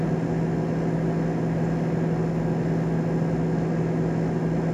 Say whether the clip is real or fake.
real